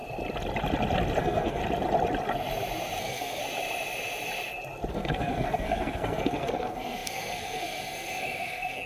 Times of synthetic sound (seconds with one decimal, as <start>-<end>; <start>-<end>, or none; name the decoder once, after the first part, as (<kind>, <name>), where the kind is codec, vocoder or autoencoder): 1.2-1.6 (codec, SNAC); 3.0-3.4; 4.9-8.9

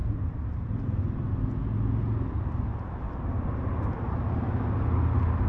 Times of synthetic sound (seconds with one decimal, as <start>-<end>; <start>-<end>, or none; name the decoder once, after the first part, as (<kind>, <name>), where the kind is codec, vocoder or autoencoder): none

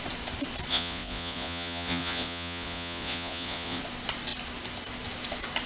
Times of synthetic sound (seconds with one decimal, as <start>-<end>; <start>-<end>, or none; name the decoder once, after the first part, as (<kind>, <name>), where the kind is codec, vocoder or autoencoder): 0.7-3.8 (vocoder, Vocos)